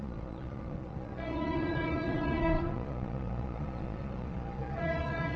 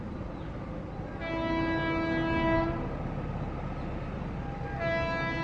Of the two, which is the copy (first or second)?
first